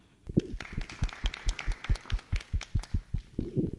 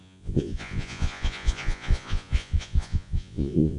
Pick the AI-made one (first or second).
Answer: second